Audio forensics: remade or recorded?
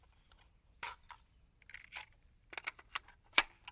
recorded